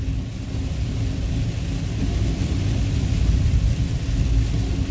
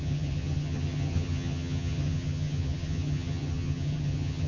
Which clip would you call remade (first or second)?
second